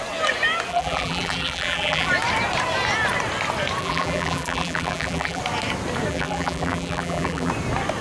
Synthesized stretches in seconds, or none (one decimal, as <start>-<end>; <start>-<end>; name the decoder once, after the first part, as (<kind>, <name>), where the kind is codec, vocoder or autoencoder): 0.7-2.1 (vocoder, BigVGAN v2); 3.8-5.4; 6.1-7.5

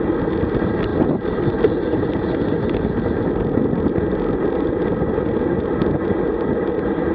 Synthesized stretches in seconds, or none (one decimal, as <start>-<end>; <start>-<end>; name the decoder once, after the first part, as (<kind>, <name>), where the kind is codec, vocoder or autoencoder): none

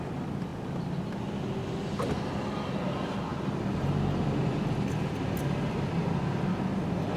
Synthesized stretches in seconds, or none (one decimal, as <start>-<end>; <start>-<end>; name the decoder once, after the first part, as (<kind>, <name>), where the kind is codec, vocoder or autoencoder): none

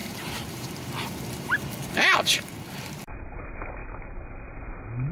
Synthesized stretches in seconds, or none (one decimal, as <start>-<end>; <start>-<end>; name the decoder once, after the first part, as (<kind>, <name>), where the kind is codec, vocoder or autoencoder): 0.0-3.1 (vocoder, BigVGAN v2)

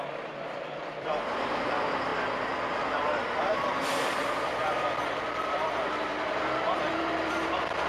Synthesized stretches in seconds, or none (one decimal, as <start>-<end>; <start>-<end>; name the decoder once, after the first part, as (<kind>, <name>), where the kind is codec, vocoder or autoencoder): 0.0-7.9 (vocoder, BigVGAN v2)

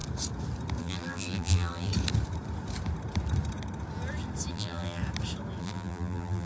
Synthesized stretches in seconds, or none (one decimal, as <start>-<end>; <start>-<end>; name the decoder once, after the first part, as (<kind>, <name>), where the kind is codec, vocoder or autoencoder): 0.8-1.9 (vocoder, BigVGAN v2); 4.5-5.0; 5.6-6.5

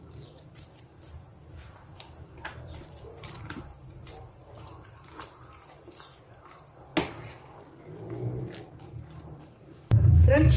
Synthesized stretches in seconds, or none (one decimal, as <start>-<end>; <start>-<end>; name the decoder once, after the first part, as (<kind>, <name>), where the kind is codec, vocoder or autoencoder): 0.0-6.9 (vocoder, BigVGAN v2); 8.7-10.6

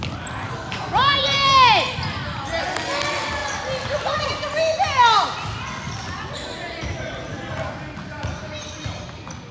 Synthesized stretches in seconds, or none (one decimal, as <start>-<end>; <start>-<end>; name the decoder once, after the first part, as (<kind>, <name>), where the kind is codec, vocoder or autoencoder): none